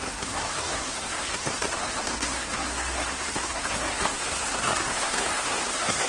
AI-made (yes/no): yes